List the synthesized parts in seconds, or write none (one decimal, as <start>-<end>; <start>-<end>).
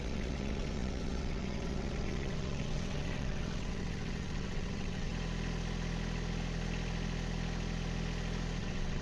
0.0-5.1; 8.6-9.0